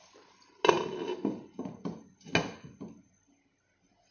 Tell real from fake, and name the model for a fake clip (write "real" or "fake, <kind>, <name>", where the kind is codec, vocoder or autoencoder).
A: real